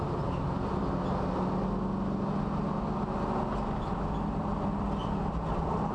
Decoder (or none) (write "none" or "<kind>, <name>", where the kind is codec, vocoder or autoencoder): none